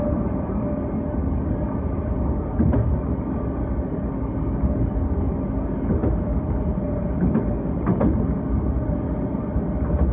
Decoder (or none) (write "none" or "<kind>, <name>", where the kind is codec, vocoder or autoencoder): none